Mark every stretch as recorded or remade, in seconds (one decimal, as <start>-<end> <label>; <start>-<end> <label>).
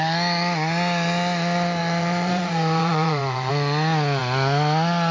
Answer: 0.0-1.8 recorded; 1.8-3.5 remade; 3.5-5.1 recorded